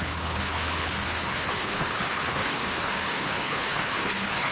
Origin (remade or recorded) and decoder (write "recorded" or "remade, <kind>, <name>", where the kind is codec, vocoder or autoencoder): remade, codec, HILCodec